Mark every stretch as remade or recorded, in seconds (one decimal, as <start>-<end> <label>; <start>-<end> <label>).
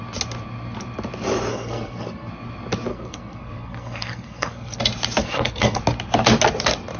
0.0-1.5 recorded; 1.5-2.3 remade; 2.3-2.9 recorded; 2.9-4.8 remade; 4.8-5.2 recorded; 5.2-5.8 remade; 5.8-7.0 recorded